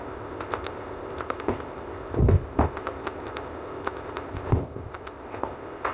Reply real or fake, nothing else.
fake